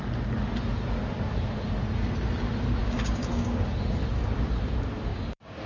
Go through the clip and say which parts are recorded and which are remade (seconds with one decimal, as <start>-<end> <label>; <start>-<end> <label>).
0.0-2.8 recorded; 2.8-3.7 remade; 3.7-5.1 recorded; 5.1-5.7 remade